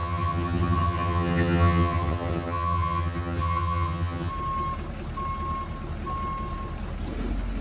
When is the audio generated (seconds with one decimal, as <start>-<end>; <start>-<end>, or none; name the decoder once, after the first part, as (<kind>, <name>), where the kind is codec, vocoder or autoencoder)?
0.0-4.3 (vocoder, HiFi-GAN)